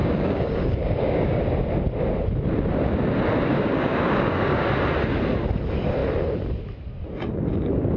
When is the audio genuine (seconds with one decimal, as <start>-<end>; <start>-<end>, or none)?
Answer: 1.3-3.5; 4.7-8.0